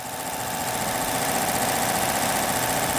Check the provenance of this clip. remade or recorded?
recorded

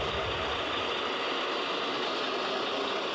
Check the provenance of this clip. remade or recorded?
recorded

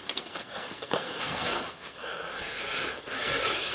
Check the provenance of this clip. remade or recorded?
remade